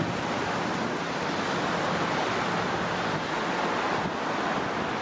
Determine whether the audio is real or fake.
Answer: real